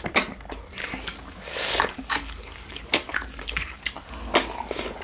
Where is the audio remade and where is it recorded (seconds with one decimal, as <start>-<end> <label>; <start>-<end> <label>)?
0.0-0.8 recorded; 0.8-3.8 remade; 3.8-5.0 recorded